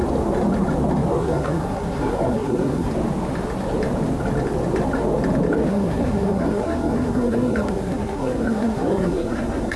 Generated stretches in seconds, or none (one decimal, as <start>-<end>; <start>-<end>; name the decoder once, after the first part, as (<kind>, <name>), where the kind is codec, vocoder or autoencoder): 1.2-2.9 (codec, SNAC); 5.7-9.8